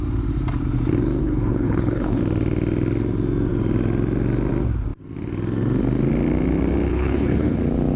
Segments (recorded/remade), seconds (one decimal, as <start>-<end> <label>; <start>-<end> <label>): 0.0-1.2 recorded; 1.2-2.2 remade; 2.2-6.9 recorded; 6.9-7.6 remade; 7.6-8.0 recorded